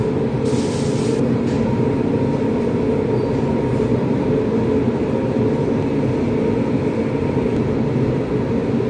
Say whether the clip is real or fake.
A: real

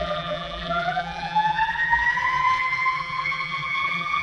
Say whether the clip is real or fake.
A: fake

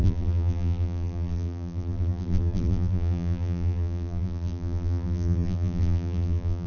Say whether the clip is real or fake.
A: fake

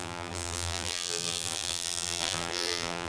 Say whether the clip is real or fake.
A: fake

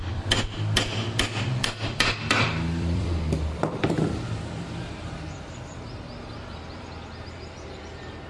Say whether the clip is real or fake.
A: fake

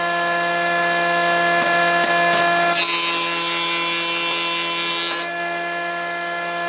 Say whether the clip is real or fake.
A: real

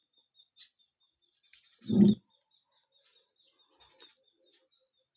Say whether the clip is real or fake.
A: real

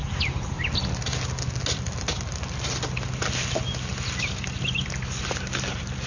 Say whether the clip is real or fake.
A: real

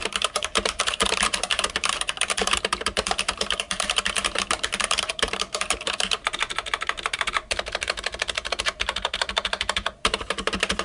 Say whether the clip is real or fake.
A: fake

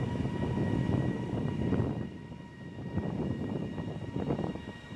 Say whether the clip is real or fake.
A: real